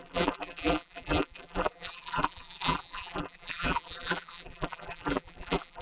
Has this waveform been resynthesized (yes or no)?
yes